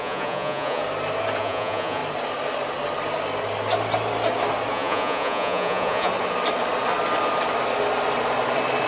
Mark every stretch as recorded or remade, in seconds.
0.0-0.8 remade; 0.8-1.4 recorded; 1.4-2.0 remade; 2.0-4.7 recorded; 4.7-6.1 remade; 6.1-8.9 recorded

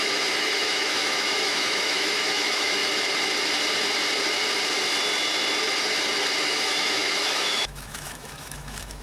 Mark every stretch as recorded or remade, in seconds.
0.0-2.8 remade; 2.8-6.4 recorded; 6.4-9.0 remade

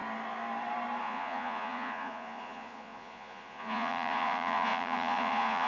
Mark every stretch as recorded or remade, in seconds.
0.0-1.0 recorded; 1.0-5.7 remade